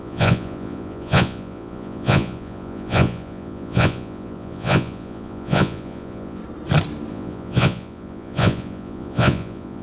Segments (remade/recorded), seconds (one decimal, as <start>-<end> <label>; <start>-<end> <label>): 0.0-6.4 remade; 6.4-7.1 recorded; 7.1-9.8 remade